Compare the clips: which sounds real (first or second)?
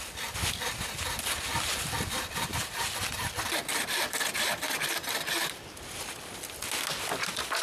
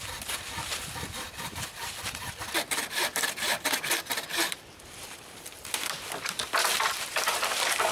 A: first